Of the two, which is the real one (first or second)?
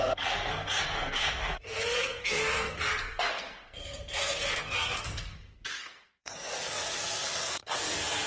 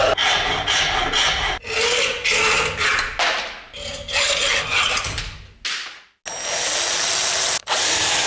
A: second